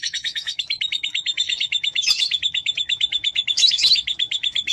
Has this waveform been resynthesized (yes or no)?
yes